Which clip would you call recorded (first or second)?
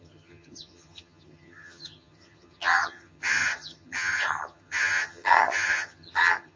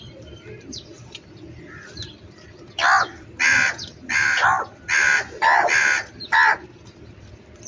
second